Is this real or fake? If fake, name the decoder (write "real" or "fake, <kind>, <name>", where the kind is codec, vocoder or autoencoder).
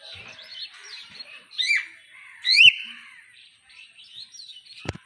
fake, vocoder, BigVGAN v2